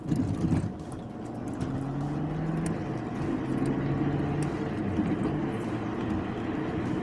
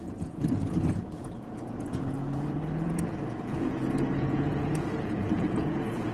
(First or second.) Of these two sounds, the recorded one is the first